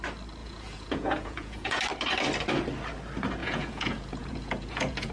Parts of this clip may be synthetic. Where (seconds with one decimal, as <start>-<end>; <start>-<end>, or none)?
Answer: 0.4-1.8; 3.4-5.1